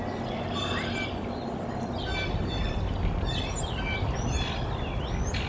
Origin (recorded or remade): recorded